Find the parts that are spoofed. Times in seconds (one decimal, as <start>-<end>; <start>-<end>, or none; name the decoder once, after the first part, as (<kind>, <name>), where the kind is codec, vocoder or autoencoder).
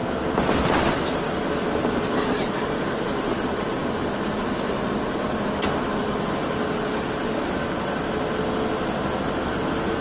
none